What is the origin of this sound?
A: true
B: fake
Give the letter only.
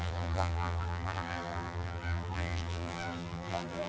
B